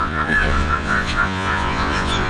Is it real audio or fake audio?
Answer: fake